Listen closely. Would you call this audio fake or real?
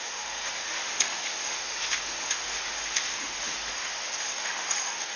fake